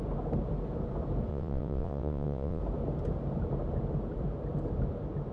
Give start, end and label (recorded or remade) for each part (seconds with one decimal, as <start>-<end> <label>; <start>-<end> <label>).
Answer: 0.0-1.3 recorded; 1.3-2.6 remade; 2.6-5.3 recorded